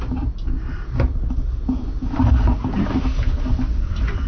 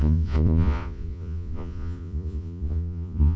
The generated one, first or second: second